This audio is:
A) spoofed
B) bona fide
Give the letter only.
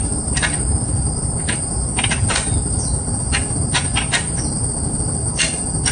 A